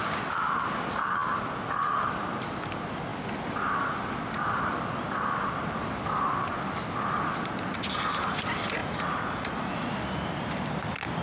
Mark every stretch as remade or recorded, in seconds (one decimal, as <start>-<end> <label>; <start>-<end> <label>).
0.0-8.8 recorded; 8.8-9.9 remade; 9.9-11.2 recorded

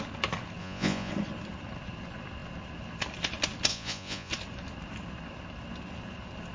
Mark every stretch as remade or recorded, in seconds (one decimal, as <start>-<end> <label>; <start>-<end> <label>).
0.0-0.6 recorded; 0.6-1.1 remade; 1.1-3.7 recorded; 3.7-4.3 remade; 4.3-6.5 recorded

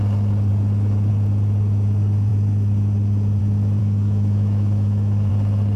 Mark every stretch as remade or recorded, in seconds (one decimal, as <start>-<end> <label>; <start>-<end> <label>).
0.0-3.8 recorded; 3.8-5.3 remade; 5.3-5.8 recorded

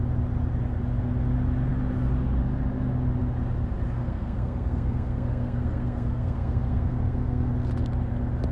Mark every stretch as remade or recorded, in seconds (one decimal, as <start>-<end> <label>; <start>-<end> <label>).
0.0-4.0 recorded; 4.0-7.5 remade; 7.5-8.5 recorded

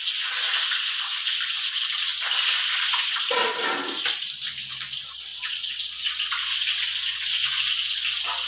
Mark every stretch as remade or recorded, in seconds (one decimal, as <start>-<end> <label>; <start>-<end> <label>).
0.0-5.3 recorded; 5.3-6.3 remade; 6.3-8.5 recorded

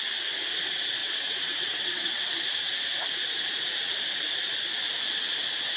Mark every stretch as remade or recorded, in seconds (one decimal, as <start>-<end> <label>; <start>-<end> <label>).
0.0-1.0 recorded; 1.0-2.2 remade; 2.2-5.8 recorded

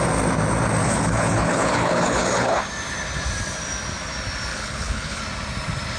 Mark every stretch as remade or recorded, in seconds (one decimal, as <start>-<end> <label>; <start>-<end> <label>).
0.0-0.8 recorded; 0.8-2.6 remade; 2.6-4.5 recorded; 4.5-5.2 remade; 5.2-6.0 recorded